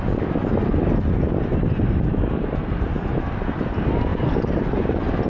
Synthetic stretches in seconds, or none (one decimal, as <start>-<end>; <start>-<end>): none